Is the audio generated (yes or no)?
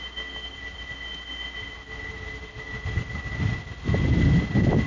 no